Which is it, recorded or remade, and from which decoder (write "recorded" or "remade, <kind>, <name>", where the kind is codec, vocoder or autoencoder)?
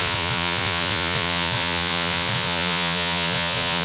remade, vocoder, Vocos